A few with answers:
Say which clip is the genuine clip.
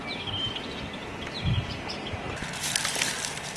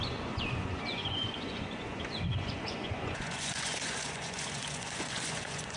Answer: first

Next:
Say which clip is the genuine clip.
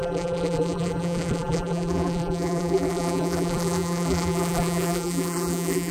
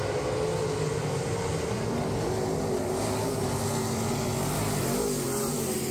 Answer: second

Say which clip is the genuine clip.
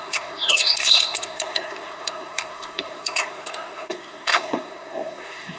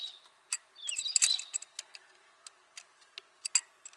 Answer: second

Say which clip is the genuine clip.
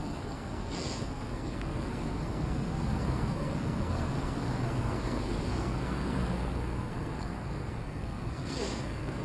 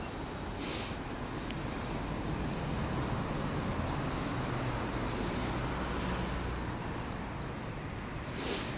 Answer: second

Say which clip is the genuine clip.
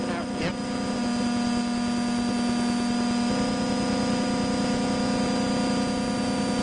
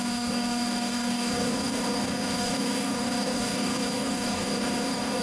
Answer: first